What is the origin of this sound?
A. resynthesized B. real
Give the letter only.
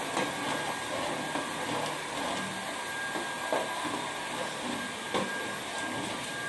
B